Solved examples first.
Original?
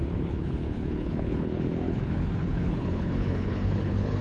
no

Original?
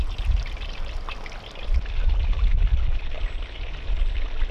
yes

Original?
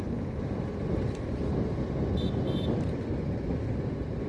yes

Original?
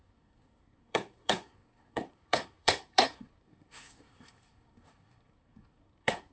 no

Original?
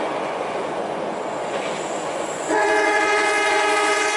no